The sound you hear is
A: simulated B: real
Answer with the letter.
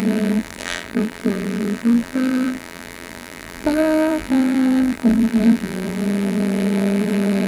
A